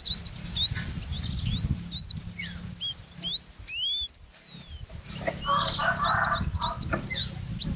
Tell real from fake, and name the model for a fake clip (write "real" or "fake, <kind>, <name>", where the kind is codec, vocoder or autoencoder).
real